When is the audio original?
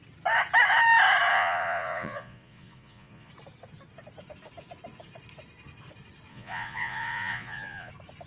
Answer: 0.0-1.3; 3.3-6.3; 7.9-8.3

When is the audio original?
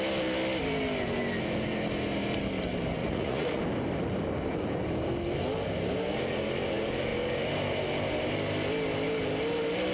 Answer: 0.0-3.0; 3.6-9.9